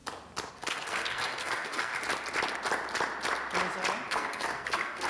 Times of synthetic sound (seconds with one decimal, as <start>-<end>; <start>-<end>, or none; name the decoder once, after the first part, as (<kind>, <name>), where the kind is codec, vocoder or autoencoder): 0.5-1.9 (codec, SNAC); 4.1-5.1